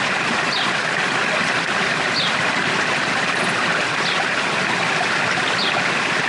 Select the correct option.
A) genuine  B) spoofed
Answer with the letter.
A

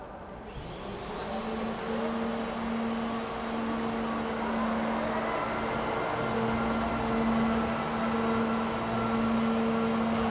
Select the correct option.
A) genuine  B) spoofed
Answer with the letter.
A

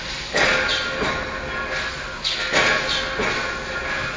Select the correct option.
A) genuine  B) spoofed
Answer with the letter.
A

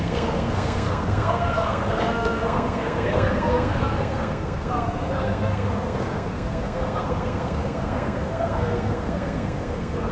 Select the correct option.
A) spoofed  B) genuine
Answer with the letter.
A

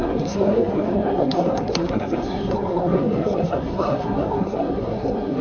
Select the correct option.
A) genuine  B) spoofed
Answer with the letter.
B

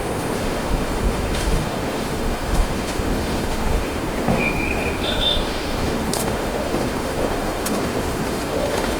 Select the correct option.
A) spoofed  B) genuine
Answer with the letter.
A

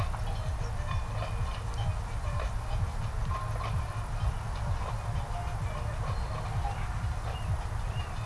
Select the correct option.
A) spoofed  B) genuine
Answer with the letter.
B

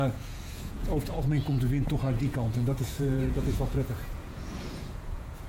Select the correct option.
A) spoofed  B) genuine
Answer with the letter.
A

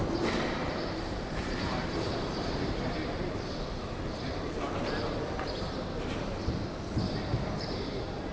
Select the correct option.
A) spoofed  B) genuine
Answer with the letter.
A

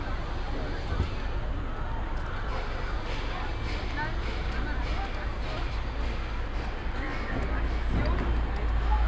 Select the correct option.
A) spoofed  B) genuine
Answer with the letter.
B